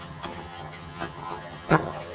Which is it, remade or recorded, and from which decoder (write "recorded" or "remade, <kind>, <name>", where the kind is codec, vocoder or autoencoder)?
remade, vocoder, HiFi-GAN